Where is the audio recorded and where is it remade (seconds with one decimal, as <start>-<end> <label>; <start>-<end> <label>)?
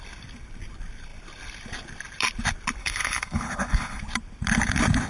0.0-2.8 recorded; 2.8-4.0 remade; 4.0-5.1 recorded